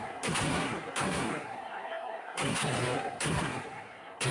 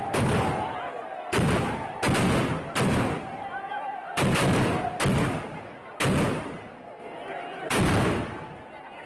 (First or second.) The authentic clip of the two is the second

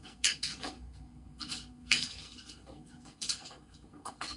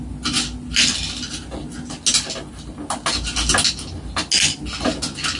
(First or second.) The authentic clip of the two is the second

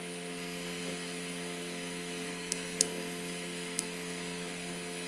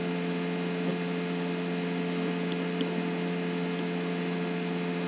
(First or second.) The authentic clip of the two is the second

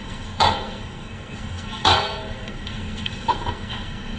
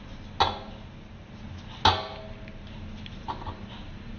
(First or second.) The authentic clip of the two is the second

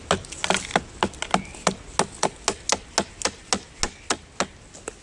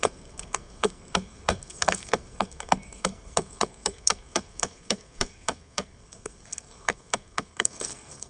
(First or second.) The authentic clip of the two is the first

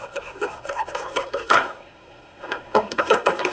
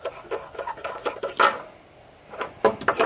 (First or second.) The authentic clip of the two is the second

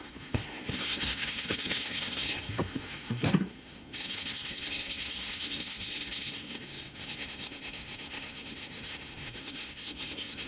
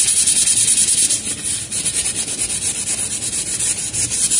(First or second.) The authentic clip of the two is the second